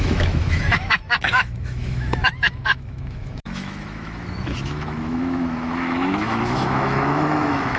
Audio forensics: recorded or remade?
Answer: remade